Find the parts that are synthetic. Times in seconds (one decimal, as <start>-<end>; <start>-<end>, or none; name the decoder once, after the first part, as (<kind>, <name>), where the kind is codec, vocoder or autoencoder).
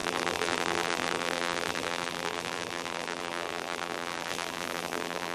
0.0-5.3 (vocoder, BigVGAN v2)